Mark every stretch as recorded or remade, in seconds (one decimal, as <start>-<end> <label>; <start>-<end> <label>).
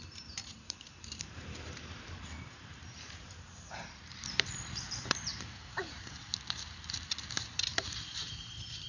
0.0-8.9 remade